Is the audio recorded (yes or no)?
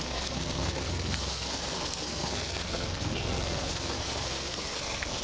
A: no